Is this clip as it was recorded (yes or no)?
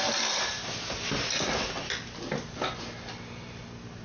yes